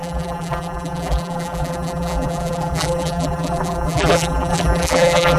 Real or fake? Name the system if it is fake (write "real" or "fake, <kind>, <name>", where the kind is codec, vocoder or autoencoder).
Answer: fake, vocoder, BigVGAN v2